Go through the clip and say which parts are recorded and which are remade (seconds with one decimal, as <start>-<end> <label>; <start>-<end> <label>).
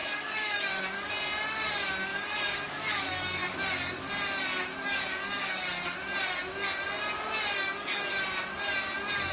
0.0-1.1 remade; 1.1-2.1 recorded; 2.1-3.6 remade; 3.6-4.8 recorded; 4.8-5.6 remade; 5.6-7.6 recorded; 7.6-8.1 remade; 8.1-9.3 recorded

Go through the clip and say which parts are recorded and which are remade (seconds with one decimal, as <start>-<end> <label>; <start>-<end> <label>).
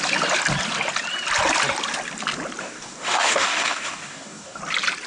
0.0-2.6 recorded; 2.6-4.6 remade; 4.6-5.1 recorded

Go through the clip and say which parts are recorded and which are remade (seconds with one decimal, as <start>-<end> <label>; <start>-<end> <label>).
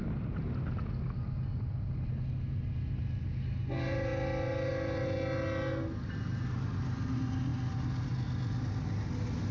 0.0-9.5 recorded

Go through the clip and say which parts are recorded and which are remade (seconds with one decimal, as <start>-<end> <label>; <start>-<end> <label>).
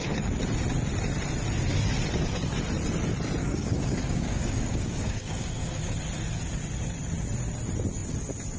0.0-3.4 recorded; 3.4-5.9 remade; 5.9-8.6 recorded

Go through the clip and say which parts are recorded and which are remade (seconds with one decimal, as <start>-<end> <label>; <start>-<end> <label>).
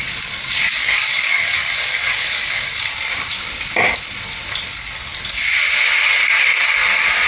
0.0-0.8 recorded; 0.8-2.6 remade; 2.6-7.3 recorded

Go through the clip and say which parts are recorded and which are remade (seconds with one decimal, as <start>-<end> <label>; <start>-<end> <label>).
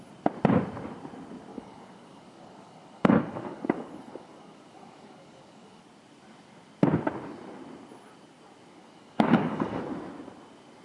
0.0-1.5 recorded; 1.5-5.8 remade; 5.8-8.8 recorded; 8.8-9.8 remade; 9.8-10.8 recorded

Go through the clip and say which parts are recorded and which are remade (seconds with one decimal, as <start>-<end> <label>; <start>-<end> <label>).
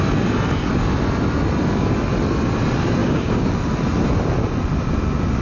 0.0-3.0 recorded; 3.0-3.5 remade; 3.5-5.4 recorded